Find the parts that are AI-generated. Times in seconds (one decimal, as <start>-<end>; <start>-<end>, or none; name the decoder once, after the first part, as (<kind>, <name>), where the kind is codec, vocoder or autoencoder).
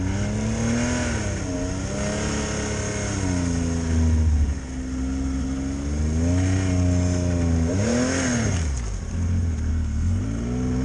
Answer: 9.7-10.2 (codec, SNAC)